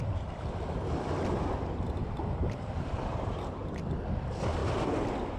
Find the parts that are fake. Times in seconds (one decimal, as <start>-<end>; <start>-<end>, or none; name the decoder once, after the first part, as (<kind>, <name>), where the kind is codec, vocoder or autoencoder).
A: 2.0-3.8 (vocoder, BigVGAN v2)